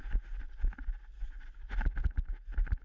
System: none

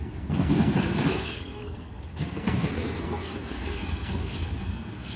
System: codec, SNAC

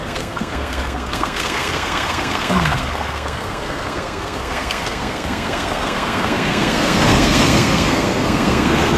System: codec, SNAC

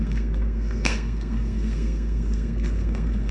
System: codec, SNAC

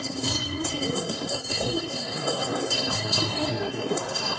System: codec, SNAC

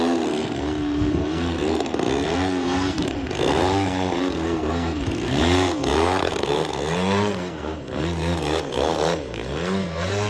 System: codec, SNAC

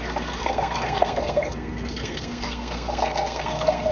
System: codec, SNAC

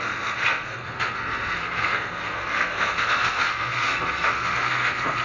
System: codec, SNAC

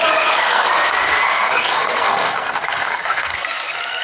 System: codec, SNAC